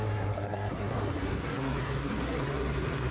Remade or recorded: remade